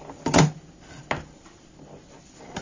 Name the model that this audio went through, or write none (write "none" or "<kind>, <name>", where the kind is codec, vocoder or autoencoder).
none